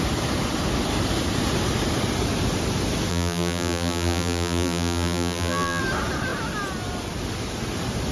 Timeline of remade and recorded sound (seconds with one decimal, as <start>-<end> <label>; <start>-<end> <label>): 0.0-3.1 recorded; 3.1-5.8 remade; 5.8-8.1 recorded